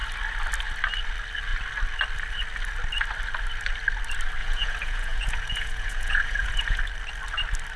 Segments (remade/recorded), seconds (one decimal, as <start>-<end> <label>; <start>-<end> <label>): 0.0-4.4 recorded; 4.4-6.8 remade; 6.8-7.8 recorded